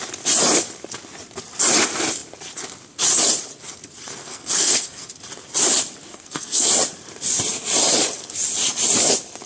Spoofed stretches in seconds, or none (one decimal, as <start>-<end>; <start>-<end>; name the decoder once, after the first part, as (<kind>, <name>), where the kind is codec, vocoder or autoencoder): 4.2-5.1 (codec, SNAC); 6.1-6.7